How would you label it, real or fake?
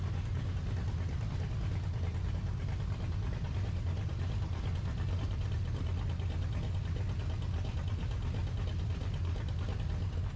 real